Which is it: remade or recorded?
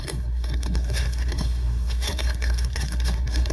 remade